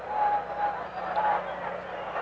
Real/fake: real